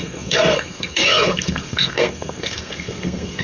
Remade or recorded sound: remade